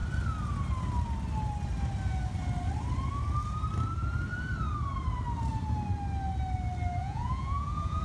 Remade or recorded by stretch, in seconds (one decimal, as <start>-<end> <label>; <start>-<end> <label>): 0.0-7.0 recorded; 7.0-8.0 remade

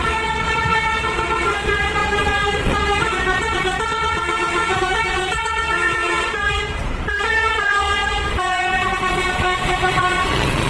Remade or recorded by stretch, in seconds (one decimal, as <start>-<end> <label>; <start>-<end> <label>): 0.0-10.7 remade

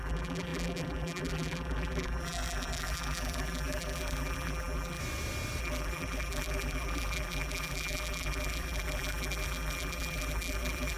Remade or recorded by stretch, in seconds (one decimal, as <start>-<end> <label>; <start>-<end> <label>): 0.0-5.0 remade; 5.0-5.6 recorded; 5.6-11.0 remade

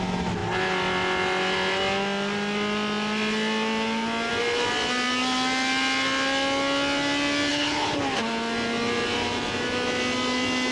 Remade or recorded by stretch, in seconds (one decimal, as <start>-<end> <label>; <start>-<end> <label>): 0.0-7.5 recorded; 7.5-8.0 remade; 8.0-10.7 recorded

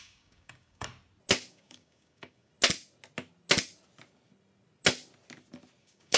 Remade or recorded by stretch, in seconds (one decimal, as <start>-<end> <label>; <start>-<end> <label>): 0.0-0.9 remade; 0.9-1.5 recorded; 1.5-2.5 remade; 2.5-5.8 recorded; 5.8-6.2 remade

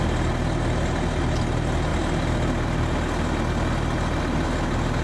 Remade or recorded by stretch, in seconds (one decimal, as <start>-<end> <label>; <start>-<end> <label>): 0.0-5.0 recorded